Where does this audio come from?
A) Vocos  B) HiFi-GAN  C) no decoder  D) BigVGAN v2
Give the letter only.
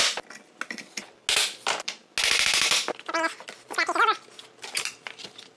C